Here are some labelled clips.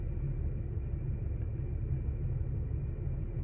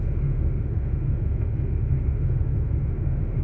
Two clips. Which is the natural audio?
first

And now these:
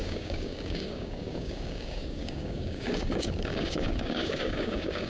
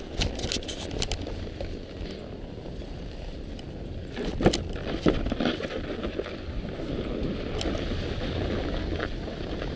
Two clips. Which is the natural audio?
second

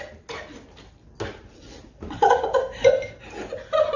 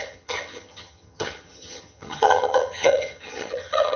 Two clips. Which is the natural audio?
first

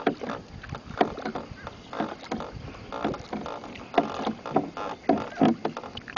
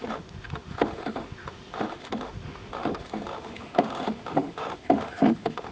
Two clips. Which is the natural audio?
first